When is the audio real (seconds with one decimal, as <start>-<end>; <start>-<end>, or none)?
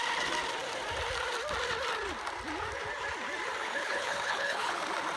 0.0-3.6; 4.8-5.2